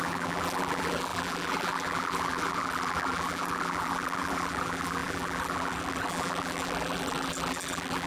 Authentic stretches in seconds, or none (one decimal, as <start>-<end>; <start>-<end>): none